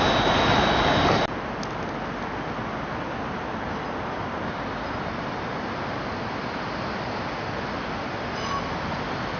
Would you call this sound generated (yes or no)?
no